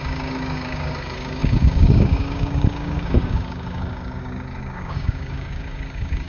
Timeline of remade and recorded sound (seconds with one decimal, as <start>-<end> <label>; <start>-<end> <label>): 0.0-6.3 remade

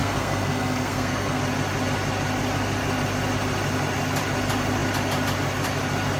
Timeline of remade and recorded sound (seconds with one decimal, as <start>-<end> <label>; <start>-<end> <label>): 0.0-1.4 remade; 1.4-6.2 recorded

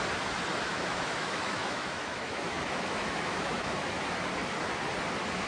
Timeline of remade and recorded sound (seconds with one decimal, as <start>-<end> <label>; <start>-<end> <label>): 0.0-0.7 recorded; 0.7-4.0 remade; 4.0-5.5 recorded

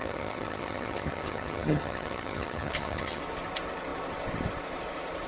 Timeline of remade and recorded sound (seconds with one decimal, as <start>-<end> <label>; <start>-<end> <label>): 0.0-3.2 remade; 3.2-5.3 recorded

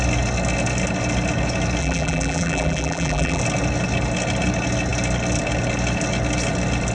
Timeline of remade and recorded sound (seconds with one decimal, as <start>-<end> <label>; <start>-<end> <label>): 0.0-1.8 recorded; 1.8-3.4 remade; 3.4-6.9 recorded

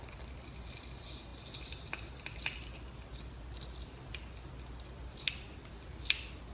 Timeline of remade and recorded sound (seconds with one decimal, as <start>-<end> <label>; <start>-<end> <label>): 0.0-6.5 recorded

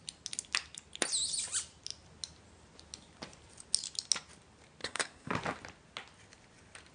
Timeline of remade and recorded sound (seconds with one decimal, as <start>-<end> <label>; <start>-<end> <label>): 0.0-4.8 recorded; 4.8-5.3 remade; 5.3-6.9 recorded

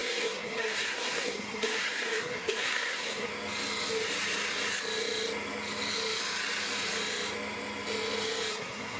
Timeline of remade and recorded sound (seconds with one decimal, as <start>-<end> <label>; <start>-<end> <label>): 0.0-3.3 remade; 3.3-8.5 recorded; 8.5-9.0 remade